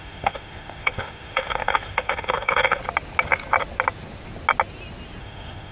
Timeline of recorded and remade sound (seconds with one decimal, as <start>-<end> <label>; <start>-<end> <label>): 0.0-2.8 remade; 2.8-5.2 recorded; 5.2-5.7 remade